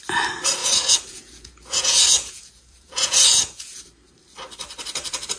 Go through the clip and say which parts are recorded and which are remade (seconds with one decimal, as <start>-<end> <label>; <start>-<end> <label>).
0.0-0.6 recorded; 0.6-3.8 remade; 3.8-5.4 recorded